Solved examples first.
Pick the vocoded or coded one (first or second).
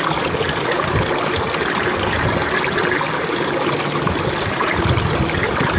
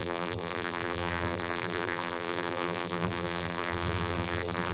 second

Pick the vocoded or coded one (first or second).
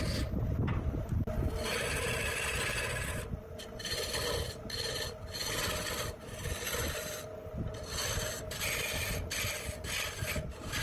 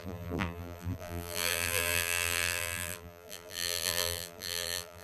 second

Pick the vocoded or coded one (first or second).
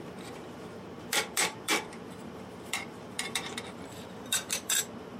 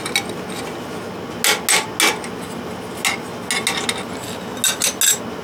first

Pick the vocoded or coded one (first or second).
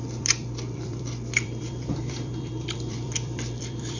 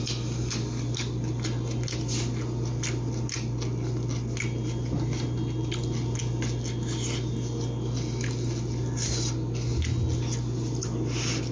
first